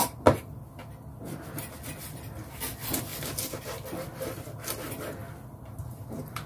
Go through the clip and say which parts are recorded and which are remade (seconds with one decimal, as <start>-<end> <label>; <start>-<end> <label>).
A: 0.0-6.5 recorded